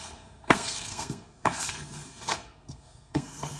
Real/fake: fake